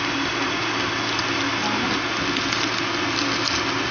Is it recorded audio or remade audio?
recorded